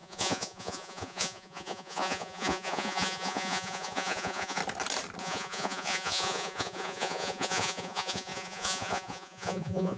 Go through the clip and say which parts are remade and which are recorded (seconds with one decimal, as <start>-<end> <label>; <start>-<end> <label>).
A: 0.0-4.6 remade; 4.6-5.2 recorded; 5.2-10.0 remade